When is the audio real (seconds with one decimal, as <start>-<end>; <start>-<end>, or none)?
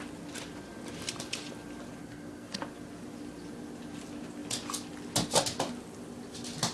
0.0-2.0; 2.6-6.7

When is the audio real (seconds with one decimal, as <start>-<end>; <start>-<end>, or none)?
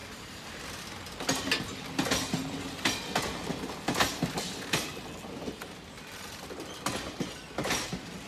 0.0-8.3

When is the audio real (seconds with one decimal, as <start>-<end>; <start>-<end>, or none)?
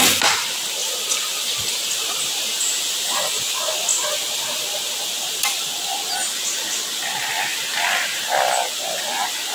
0.0-0.8; 2.2-7.5; 8.2-9.5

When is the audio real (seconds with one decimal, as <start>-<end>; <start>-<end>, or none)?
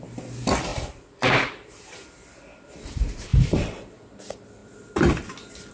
0.0-0.7; 2.9-3.3; 4.0-5.7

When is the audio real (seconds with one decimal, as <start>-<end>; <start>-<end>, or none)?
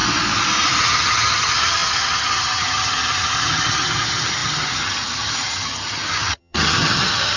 0.0-0.8